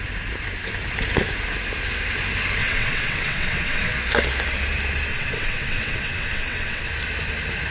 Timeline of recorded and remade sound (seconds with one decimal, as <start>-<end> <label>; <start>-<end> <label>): 0.0-2.6 recorded; 2.6-3.9 remade; 3.9-5.1 recorded; 5.1-6.9 remade; 6.9-7.7 recorded